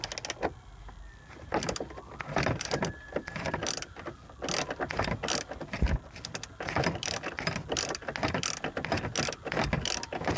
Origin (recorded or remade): recorded